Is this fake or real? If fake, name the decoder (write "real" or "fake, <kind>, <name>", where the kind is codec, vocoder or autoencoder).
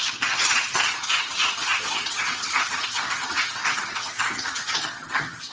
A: fake, vocoder, HiFi-GAN